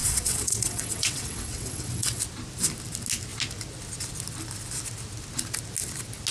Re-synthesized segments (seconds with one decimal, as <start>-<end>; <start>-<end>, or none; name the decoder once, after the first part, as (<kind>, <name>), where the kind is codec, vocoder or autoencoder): 0.0-2.2 (vocoder, WaveNeXt)

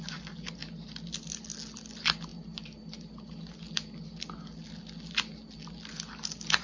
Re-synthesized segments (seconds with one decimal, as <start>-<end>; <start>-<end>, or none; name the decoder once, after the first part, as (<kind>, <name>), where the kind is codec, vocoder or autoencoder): none

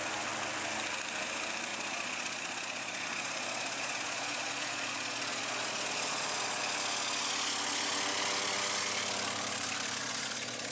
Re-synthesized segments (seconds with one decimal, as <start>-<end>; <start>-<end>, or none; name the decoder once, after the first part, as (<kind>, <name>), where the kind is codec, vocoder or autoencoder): 1.7-6.6 (vocoder, Vocos); 10.0-10.7